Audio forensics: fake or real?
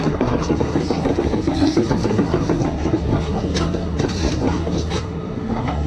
fake